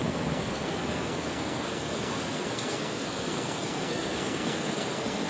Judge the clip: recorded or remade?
remade